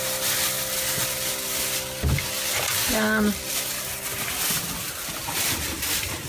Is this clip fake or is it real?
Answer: real